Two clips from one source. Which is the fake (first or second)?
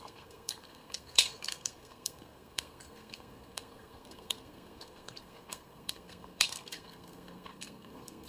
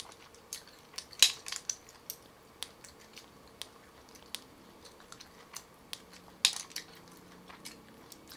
first